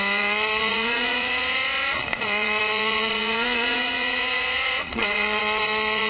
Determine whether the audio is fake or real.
fake